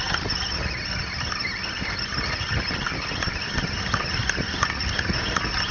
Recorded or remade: recorded